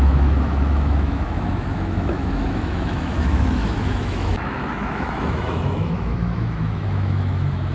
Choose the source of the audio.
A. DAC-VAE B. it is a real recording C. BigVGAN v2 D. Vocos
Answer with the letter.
A